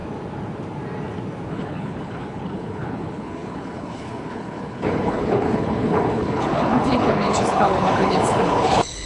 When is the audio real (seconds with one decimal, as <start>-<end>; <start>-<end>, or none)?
0.0-1.5